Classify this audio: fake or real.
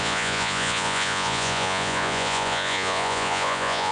fake